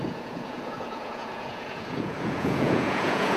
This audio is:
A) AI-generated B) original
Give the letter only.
A